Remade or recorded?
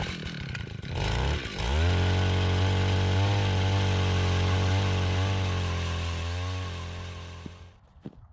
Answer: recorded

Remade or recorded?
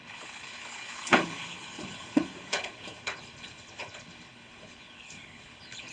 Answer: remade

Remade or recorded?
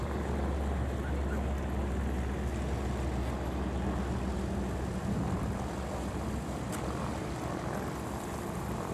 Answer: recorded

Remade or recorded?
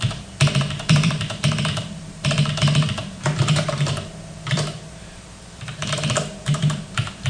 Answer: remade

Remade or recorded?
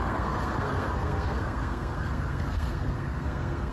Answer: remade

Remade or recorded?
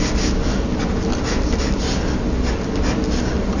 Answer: recorded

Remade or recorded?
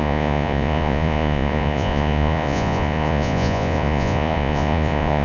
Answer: remade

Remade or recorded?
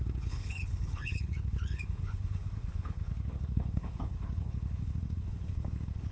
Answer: remade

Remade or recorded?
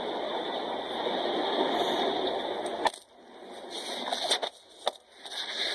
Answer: recorded